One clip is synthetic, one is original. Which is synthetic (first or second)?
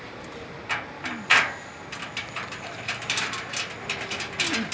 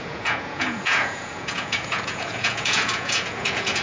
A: second